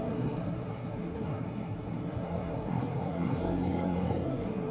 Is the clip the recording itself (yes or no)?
no